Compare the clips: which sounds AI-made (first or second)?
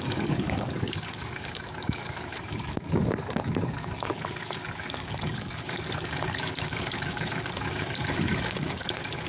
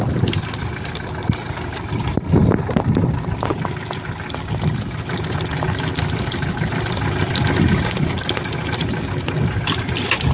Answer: first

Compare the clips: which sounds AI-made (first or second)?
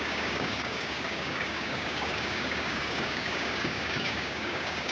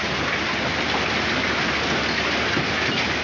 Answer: first